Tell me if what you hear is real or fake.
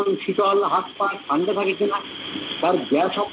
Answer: real